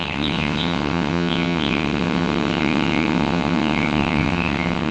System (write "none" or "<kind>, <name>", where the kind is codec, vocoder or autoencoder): vocoder, WaveNeXt